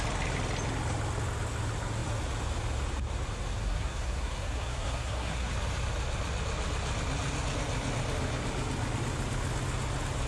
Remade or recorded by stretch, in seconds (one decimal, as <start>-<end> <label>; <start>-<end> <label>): 0.0-3.6 recorded; 3.6-5.5 remade; 5.5-10.3 recorded